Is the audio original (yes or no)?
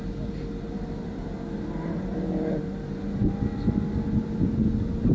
yes